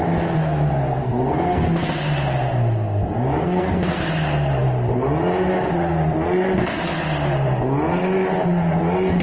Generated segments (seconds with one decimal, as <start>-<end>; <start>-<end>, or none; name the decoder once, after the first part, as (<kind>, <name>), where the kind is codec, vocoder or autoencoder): 1.0-1.8 (codec, SNAC); 3.4-4.0

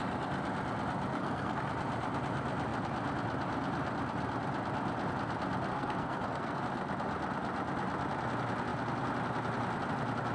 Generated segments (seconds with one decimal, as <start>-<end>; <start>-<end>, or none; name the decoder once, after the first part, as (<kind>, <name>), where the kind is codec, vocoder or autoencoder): 1.1-1.6 (codec, SNAC); 5.7-6.6

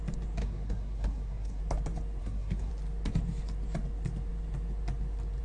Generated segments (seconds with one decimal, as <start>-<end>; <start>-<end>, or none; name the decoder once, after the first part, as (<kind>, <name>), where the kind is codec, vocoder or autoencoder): 0.4-1.6 (codec, SNAC); 2.2-2.7

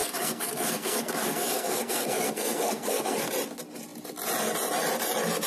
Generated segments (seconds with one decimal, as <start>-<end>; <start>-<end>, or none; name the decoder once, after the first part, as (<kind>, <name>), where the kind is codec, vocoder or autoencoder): 0.0-3.3 (codec, SNAC)

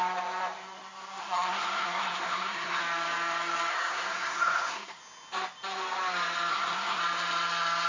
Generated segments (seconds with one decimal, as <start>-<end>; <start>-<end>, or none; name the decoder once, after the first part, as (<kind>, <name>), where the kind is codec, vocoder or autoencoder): 1.2-2.8 (codec, SNAC); 3.7-5.0; 6.5-7.0